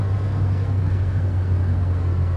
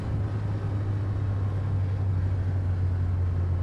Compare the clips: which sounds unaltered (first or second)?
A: second